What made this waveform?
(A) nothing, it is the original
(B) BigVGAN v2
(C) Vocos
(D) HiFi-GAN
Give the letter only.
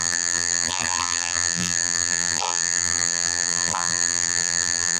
B